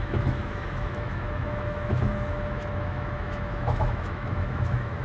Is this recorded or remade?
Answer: remade